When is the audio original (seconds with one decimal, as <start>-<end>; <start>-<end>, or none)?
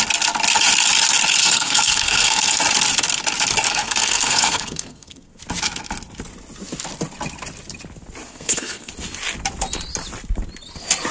0.0-1.4; 2.6-3.7; 5.4-8.3; 8.9-11.1